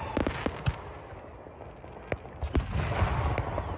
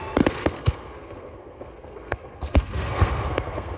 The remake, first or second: second